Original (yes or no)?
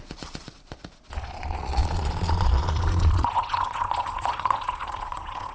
no